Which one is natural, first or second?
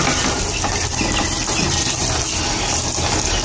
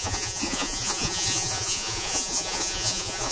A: first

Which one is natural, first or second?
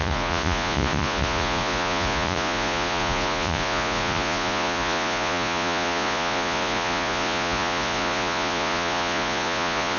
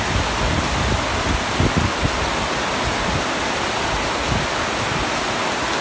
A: second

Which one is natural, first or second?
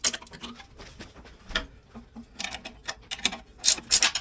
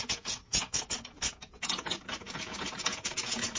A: first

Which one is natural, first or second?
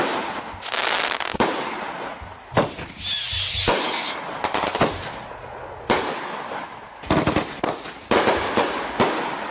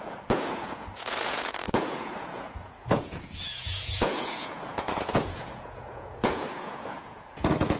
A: first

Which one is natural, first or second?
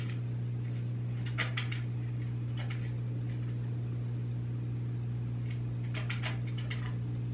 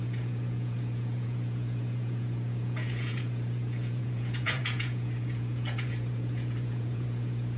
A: first